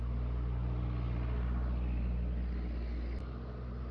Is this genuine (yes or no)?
yes